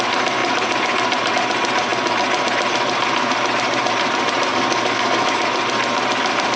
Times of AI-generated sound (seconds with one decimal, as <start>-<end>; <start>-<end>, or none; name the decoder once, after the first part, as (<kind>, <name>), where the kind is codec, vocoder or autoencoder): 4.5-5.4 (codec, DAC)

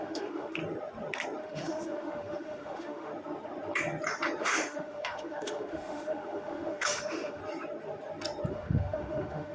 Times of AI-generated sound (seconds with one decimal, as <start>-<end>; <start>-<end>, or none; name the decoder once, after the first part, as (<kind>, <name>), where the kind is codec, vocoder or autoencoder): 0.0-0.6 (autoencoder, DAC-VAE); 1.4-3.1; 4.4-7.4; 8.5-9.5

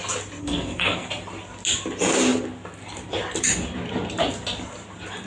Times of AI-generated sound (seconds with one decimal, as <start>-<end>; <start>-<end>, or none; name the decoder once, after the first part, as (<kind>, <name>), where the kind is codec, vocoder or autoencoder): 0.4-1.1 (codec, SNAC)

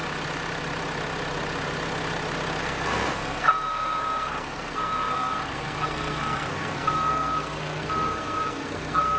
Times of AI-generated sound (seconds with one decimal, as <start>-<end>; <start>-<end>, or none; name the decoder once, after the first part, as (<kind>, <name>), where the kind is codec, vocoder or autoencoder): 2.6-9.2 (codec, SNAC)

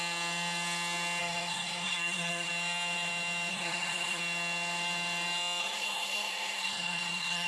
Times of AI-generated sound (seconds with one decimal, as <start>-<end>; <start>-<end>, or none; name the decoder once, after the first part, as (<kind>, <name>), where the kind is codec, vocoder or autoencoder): 1.2-2.5 (codec, SNAC); 3.5-4.2; 5.6-7.5

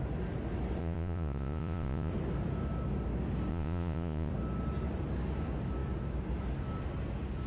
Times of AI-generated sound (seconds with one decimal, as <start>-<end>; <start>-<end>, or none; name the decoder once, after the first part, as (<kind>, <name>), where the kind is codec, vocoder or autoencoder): 0.8-2.1 (vocoder, Vocos); 3.5-4.3

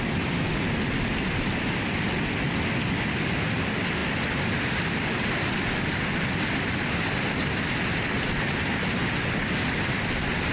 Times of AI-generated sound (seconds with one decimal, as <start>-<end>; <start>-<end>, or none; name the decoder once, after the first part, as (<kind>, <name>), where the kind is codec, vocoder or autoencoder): 4.0-7.8 (vocoder, BigVGAN v2)